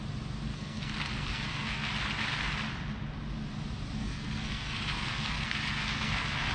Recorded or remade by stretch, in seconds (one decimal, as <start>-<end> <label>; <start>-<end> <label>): 0.0-0.5 recorded; 0.5-1.9 remade; 1.9-4.0 recorded; 4.0-6.5 remade